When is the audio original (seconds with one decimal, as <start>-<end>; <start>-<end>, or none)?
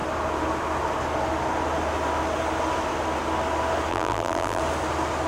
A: 0.0-3.9; 4.6-5.3